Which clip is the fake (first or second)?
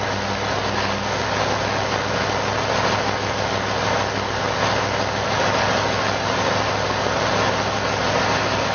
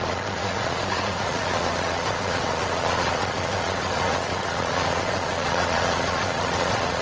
second